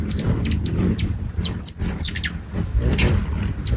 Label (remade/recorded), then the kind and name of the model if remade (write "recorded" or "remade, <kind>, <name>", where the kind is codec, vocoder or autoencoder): remade, vocoder, BigVGAN v2